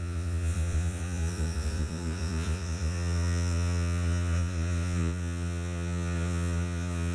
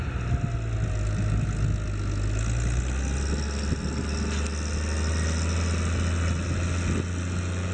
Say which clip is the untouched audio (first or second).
second